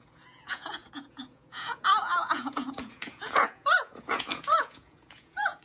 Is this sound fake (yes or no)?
yes